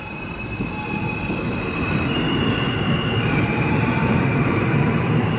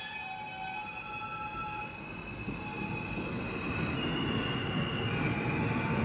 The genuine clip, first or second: second